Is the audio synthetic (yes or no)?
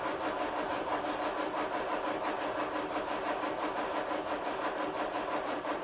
no